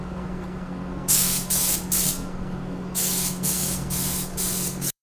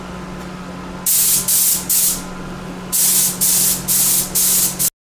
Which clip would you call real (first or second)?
second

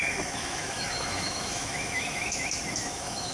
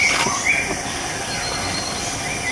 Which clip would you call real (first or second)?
second